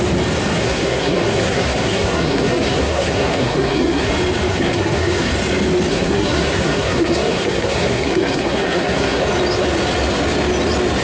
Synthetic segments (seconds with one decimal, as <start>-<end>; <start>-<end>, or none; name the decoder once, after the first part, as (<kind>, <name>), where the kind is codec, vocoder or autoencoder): 0.6-4.1 (codec, SNAC); 4.5-5.3; 5.9-9.2